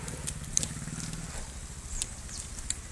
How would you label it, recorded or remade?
recorded